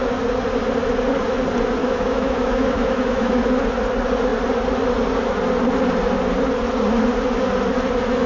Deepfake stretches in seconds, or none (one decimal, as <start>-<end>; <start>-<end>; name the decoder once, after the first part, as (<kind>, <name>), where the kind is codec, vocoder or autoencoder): 1.8-3.3 (autoencoder, DAC-VAE)

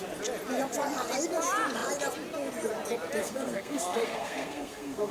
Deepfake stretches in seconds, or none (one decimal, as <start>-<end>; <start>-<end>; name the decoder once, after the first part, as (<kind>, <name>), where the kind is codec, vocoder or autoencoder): 3.2-5.1 (codec, SNAC)

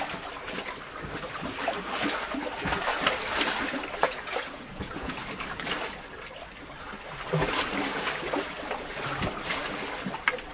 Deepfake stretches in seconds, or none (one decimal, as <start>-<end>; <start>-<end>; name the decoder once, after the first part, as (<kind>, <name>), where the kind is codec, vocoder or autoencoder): 4.0-5.2 (vocoder, Vocos)

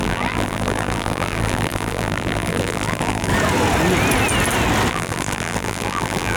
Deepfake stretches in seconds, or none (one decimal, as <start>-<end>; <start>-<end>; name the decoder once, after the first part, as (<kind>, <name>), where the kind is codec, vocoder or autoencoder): 0.0-3.3 (vocoder, BigVGAN v2); 4.9-6.4

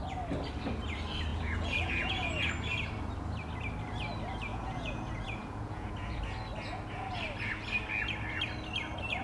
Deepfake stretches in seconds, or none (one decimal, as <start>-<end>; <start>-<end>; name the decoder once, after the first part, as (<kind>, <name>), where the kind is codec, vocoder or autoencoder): 1.3-2.5 (vocoder, Vocos); 4.5-6.2

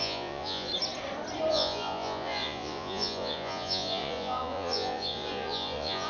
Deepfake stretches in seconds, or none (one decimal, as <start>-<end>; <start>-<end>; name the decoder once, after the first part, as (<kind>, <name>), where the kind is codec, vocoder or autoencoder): 0.0-0.7 (vocoder, Vocos); 1.5-6.1